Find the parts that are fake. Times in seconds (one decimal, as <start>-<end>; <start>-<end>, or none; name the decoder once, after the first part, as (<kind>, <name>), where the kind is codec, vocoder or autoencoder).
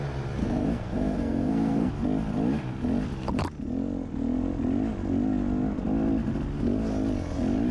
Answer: 0.4-1.9 (codec, SNAC)